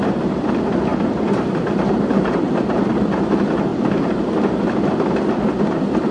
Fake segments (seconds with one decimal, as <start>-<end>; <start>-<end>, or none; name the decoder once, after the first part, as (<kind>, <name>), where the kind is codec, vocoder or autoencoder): 0.9-2.9 (vocoder, BigVGAN v2); 3.7-4.4